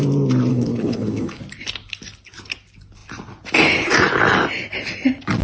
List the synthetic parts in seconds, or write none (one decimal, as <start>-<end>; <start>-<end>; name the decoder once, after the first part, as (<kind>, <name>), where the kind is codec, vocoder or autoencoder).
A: 0.5-1.4 (codec, HILCodec)